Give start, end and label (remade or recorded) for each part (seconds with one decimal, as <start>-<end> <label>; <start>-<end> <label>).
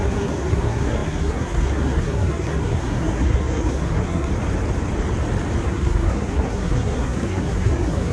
0.0-4.3 remade; 4.3-5.6 recorded; 5.6-8.1 remade